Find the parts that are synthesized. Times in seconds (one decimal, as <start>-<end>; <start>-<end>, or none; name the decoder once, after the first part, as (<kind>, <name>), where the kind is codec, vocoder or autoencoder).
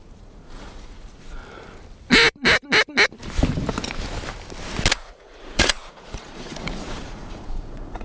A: 0.0-1.4 (vocoder, Vocos); 4.9-8.0